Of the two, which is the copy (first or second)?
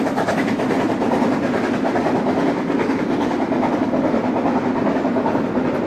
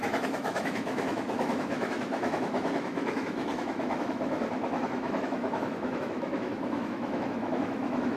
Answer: second